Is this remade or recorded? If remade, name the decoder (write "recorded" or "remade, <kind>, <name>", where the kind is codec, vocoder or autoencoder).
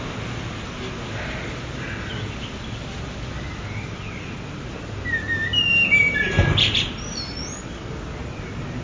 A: recorded